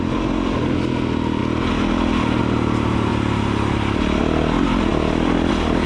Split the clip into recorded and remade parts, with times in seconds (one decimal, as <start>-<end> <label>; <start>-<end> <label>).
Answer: 0.0-5.9 recorded